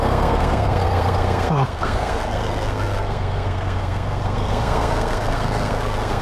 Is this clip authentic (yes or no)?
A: no